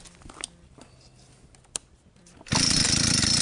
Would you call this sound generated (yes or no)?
no